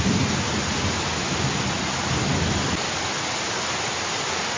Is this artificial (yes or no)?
no